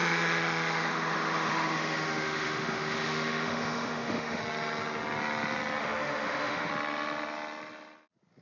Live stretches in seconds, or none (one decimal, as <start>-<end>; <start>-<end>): 4.4-5.8; 6.7-8.4